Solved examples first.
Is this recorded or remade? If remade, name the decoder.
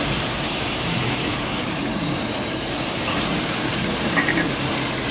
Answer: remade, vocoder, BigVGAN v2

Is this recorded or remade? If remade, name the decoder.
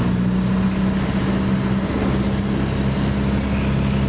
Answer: recorded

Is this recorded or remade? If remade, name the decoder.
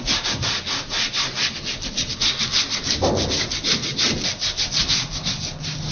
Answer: recorded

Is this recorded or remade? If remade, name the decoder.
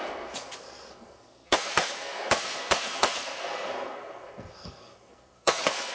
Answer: remade, codec, SNAC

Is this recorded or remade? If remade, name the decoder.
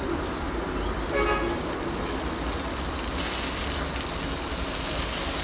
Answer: recorded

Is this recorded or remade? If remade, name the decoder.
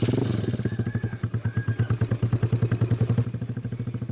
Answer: recorded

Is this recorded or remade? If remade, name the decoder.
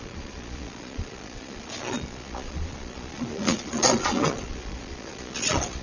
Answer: remade, vocoder, Vocos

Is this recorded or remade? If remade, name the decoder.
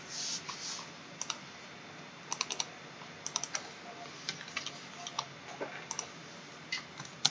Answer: recorded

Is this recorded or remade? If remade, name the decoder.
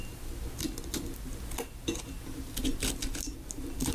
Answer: recorded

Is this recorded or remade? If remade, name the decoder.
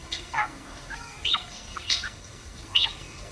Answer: remade, codec, SNAC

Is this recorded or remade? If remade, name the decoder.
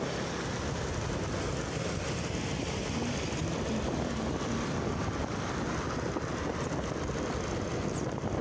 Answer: recorded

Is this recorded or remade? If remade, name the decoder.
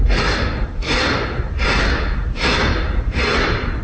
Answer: recorded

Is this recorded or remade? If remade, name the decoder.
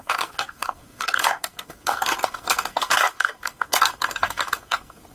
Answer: remade, codec, SNAC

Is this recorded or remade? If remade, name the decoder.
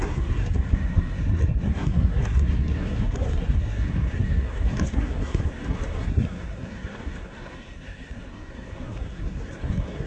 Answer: remade, codec, SNAC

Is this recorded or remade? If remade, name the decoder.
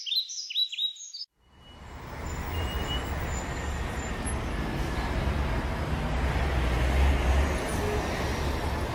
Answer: recorded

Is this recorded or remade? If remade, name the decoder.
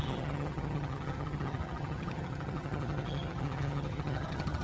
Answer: remade, vocoder, HiFi-GAN